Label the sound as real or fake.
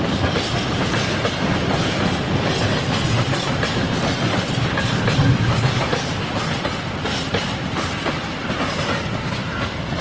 fake